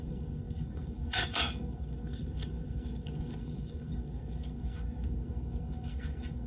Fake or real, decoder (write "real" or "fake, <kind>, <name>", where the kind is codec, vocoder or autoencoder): fake, codec, SNAC